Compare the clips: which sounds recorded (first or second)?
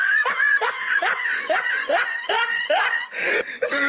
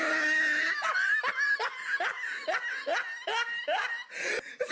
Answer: second